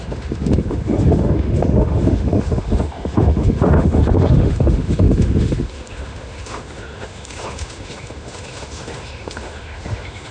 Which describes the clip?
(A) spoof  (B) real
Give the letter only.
A